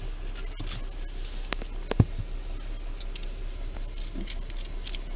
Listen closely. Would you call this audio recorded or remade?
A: recorded